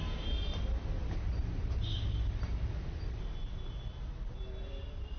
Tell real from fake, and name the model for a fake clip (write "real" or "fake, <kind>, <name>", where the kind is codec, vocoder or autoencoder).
real